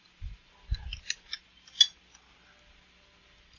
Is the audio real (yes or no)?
yes